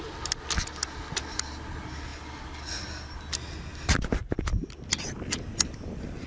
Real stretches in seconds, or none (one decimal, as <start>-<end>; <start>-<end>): 0.0-6.3